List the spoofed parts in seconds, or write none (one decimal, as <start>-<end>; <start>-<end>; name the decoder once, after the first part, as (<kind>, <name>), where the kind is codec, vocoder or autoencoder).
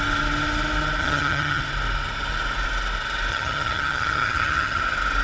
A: 1.0-1.6 (vocoder, HiFi-GAN); 3.3-4.8